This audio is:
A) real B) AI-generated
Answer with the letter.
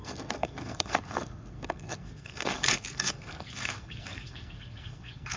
B